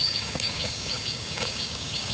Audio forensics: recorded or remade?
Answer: remade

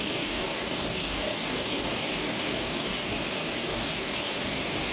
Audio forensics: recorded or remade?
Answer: remade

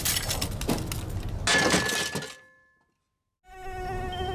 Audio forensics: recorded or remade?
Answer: recorded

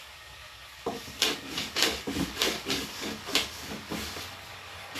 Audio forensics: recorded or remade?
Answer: remade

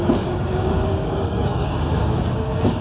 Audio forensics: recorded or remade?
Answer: remade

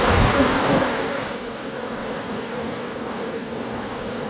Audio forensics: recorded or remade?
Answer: remade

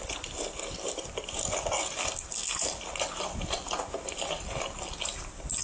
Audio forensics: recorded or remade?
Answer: recorded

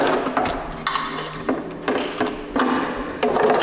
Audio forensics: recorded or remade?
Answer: recorded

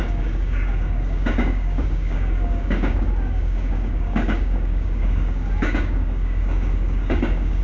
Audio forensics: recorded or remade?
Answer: remade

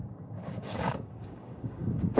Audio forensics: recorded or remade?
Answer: remade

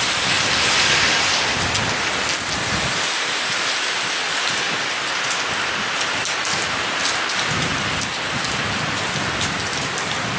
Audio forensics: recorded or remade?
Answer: recorded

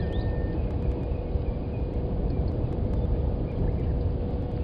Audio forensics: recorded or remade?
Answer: recorded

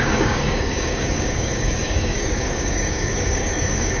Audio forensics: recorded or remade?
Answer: remade